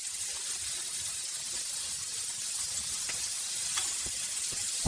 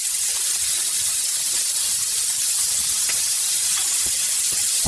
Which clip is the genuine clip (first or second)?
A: first